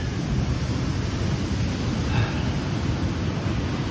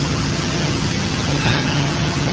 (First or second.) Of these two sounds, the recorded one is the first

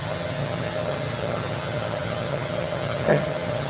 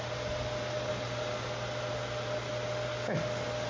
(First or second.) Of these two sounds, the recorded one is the second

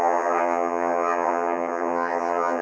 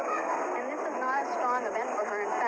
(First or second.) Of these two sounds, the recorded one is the second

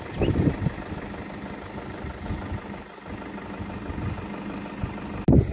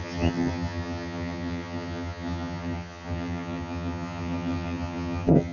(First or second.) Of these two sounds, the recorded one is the first